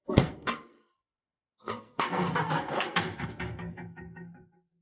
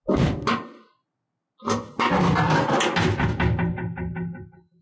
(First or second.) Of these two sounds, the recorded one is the second